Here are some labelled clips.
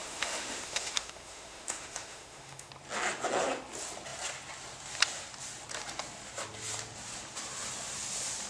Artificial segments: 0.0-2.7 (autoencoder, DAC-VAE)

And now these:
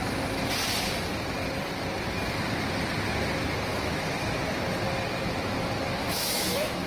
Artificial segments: 3.7-4.4 (autoencoder, DAC-VAE); 6.0-6.9

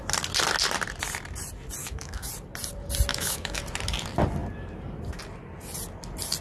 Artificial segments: 1.8-2.3 (autoencoder, DAC-VAE); 3.1-3.6

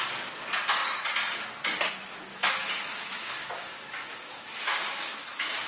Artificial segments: 2.3-5.7 (autoencoder, DAC-VAE)

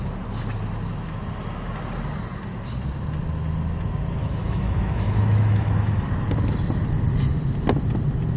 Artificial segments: 4.2-6.1 (autoencoder, DAC-VAE)

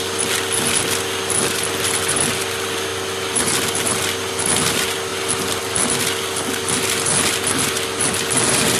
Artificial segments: none

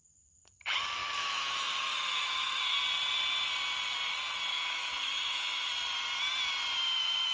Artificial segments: 1.0-2.8 (autoencoder, DAC-VAE); 4.5-5.7

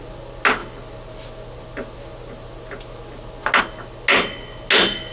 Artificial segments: none